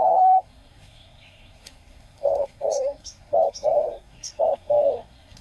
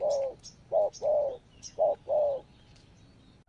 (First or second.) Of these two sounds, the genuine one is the second